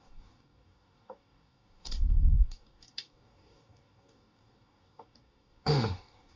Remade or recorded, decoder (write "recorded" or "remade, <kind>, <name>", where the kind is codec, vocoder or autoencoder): remade, codec, DAC